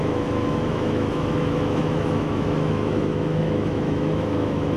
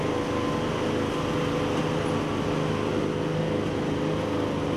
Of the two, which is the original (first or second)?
second